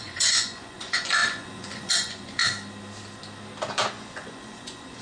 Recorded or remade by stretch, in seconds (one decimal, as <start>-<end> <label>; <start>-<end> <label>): 0.0-2.4 remade; 2.4-3.9 recorded; 3.9-5.0 remade